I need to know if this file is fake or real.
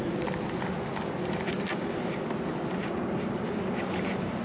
real